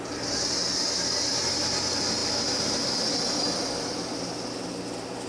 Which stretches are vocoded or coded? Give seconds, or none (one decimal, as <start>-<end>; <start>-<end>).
none

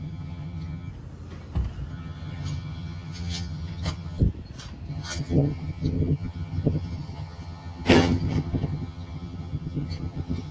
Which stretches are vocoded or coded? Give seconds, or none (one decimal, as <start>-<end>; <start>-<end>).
0.0-0.9; 1.9-4.2; 4.9-10.5